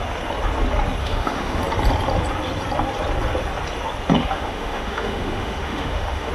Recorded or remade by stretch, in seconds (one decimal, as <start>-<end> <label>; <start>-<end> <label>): 0.0-1.0 recorded; 1.0-1.6 remade; 1.6-4.2 recorded; 4.2-6.3 remade